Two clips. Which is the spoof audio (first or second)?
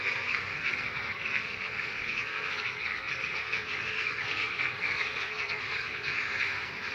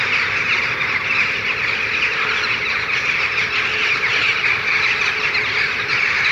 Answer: first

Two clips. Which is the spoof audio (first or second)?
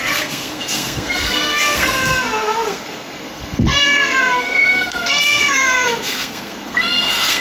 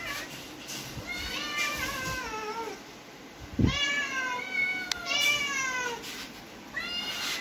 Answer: first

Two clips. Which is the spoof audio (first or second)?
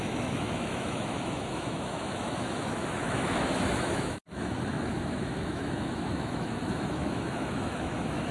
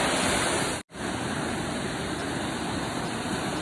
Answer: first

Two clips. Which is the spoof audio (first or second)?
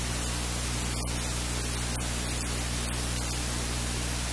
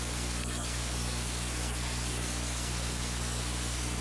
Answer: second